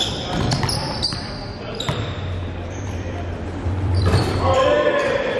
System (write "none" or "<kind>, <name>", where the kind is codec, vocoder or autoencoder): vocoder, BigVGAN v2